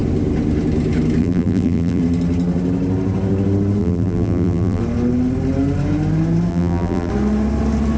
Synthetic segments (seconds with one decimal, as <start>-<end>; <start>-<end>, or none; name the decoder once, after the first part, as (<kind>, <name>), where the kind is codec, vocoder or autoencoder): 1.2-2.0 (vocoder, BigVGAN v2); 3.8-4.8; 6.5-7.1